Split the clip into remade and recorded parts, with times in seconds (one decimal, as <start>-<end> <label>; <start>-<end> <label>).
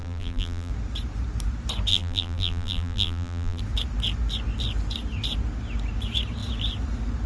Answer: 0.0-0.7 remade; 0.7-1.9 recorded; 1.9-3.6 remade; 3.6-7.3 recorded